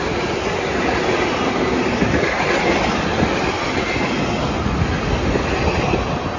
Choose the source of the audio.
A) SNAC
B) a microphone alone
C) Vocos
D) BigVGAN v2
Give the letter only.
B